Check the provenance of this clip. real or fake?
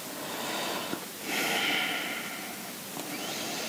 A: real